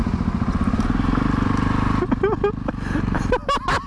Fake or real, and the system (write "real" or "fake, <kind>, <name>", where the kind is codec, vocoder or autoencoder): real